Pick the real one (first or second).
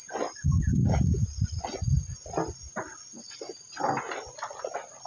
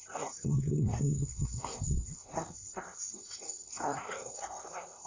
first